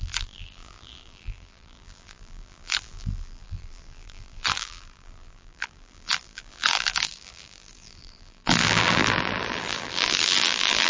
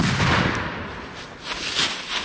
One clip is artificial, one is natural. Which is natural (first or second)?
second